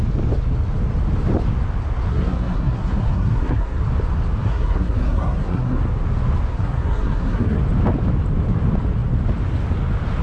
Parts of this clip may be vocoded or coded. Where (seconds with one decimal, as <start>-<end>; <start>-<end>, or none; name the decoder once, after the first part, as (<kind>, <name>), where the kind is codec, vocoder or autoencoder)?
2.1-3.8 (codec, SNAC); 4.4-5.8; 6.5-7.6